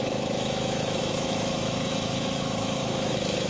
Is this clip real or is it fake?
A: fake